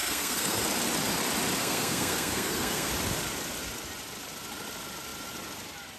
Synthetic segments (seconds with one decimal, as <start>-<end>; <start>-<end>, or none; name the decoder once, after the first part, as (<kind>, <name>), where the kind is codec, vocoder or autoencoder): 0.0-0.6 (codec, SNAC); 1.6-2.9